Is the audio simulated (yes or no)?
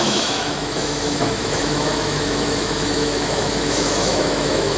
yes